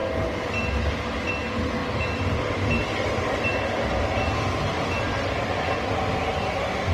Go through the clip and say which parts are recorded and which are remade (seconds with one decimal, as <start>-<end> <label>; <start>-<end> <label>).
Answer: 0.0-6.9 recorded